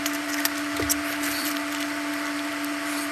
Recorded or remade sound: remade